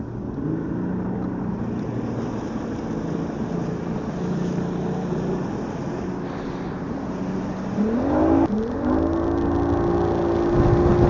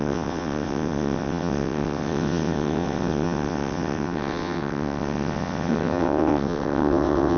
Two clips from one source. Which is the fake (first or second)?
second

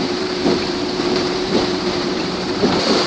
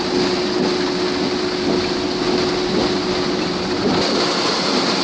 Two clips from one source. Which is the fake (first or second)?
first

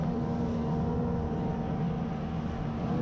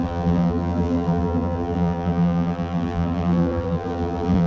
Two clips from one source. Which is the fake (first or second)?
second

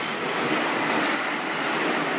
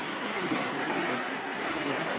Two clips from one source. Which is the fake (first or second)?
second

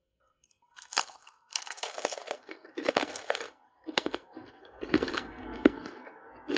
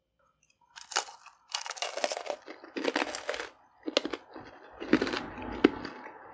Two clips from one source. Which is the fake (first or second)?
first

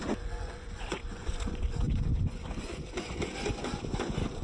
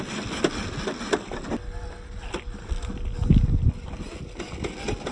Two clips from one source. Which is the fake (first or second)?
first